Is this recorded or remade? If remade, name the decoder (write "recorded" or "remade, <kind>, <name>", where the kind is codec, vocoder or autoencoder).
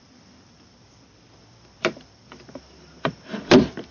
remade, vocoder, BigVGAN v2